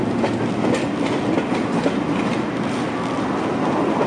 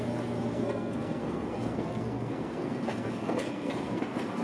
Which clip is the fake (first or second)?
second